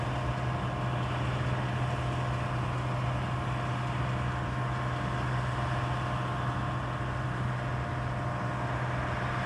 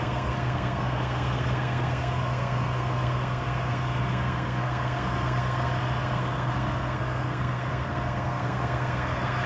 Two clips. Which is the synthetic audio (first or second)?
second